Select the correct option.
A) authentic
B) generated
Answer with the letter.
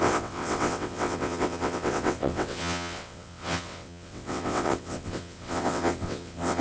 B